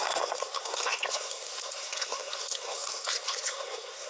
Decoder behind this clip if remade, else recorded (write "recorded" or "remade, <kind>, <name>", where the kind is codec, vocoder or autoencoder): remade, codec, SNAC